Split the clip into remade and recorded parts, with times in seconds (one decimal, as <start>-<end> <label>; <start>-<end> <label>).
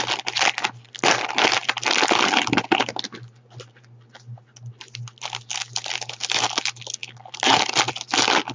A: 0.0-8.5 recorded